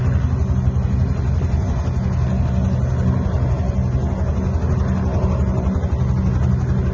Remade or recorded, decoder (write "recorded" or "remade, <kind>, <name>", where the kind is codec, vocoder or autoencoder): recorded